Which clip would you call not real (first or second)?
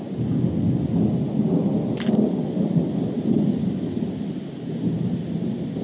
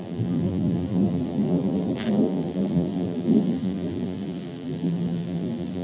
second